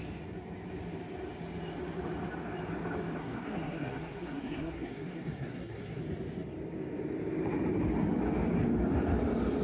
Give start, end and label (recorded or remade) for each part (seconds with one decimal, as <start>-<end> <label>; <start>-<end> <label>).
0.0-3.2 recorded; 3.2-6.0 remade; 6.0-9.6 recorded